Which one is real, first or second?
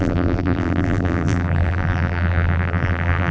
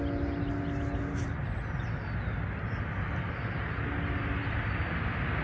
second